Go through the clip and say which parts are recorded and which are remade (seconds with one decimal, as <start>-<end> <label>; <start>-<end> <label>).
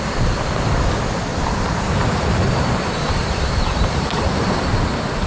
0.0-1.3 recorded; 1.3-4.5 remade; 4.5-5.3 recorded